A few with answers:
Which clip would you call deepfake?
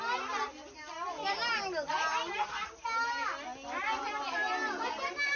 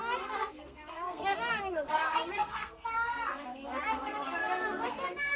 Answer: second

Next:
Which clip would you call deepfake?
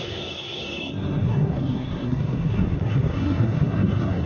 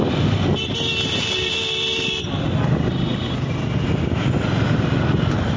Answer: first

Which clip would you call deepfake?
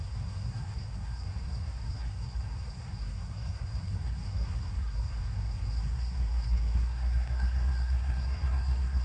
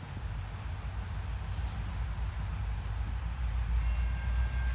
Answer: first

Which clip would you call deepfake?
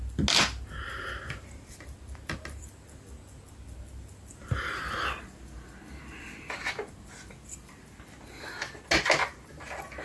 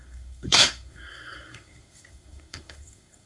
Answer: second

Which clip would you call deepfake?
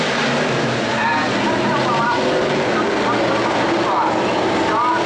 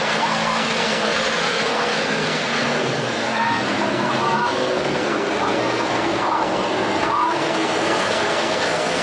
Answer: second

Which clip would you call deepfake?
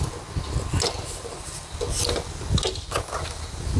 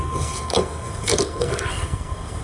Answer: second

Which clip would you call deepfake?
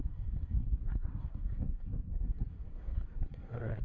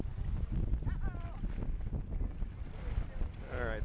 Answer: first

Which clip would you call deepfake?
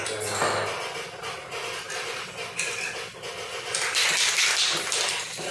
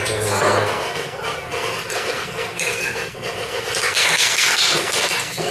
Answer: second